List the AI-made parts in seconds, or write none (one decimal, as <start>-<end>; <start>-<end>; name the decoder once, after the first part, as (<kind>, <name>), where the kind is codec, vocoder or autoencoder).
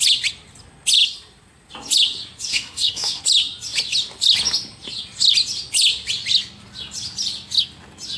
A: 2.5-3.2 (codec, SNAC)